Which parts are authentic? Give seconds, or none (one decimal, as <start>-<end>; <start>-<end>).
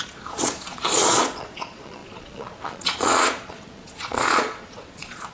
none